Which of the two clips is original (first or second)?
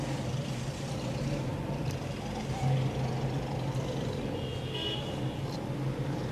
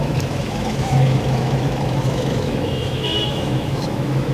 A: first